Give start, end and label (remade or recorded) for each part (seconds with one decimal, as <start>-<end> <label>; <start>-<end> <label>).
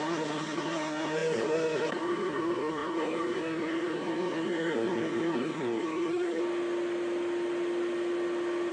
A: 0.0-6.4 remade; 6.4-8.7 recorded